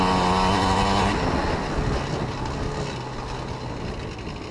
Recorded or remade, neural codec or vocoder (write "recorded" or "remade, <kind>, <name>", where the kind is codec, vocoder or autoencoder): recorded